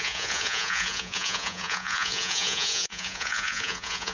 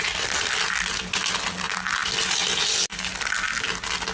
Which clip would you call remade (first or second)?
first